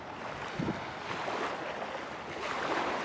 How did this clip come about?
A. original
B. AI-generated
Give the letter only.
A